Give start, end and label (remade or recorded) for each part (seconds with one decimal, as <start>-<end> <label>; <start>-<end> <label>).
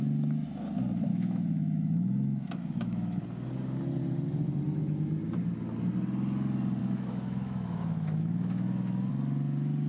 0.0-1.1 recorded; 1.1-3.2 remade; 3.2-6.8 recorded; 6.8-9.1 remade; 9.1-9.9 recorded